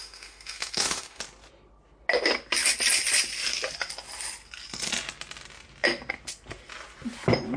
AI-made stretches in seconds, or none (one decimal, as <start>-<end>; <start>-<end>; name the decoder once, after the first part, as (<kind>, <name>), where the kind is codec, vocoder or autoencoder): 0.0-1.2 (autoencoder, DAC-VAE)